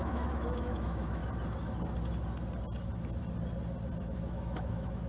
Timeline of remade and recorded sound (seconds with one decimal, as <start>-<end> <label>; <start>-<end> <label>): 0.0-1.2 remade; 1.2-4.0 recorded; 4.0-5.1 remade